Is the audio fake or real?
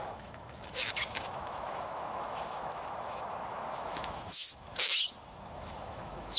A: fake